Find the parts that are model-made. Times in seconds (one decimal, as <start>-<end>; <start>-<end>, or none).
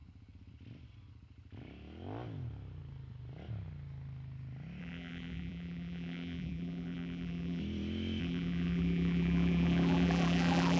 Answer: 4.8-7.6; 8.2-10.8